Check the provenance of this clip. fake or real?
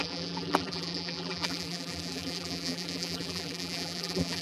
fake